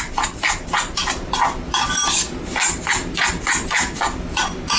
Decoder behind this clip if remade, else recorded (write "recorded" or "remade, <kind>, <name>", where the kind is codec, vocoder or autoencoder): recorded